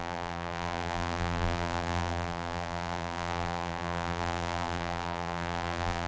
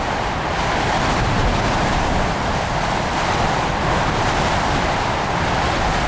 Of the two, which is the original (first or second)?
second